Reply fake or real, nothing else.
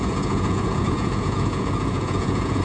fake